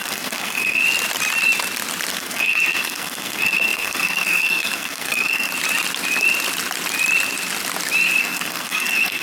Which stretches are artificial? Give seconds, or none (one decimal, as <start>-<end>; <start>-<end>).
0.0-0.8; 2.1-5.5; 8.2-9.2